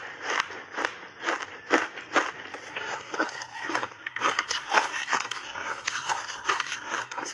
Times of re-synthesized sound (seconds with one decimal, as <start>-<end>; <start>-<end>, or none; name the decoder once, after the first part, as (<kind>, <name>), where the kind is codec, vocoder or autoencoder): 2.7-7.3 (codec, SNAC)